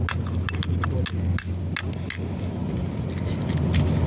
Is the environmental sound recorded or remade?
recorded